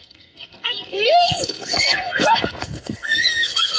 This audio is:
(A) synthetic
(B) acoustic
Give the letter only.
A